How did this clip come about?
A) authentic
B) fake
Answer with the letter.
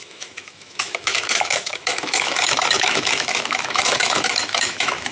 B